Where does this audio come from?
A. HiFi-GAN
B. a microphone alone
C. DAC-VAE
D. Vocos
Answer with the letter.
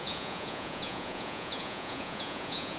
D